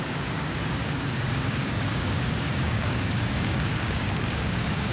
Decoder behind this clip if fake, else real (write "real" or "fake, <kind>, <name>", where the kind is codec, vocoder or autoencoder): fake, codec, DAC